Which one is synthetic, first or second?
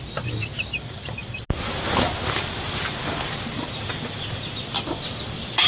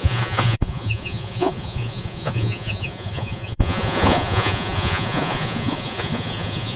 second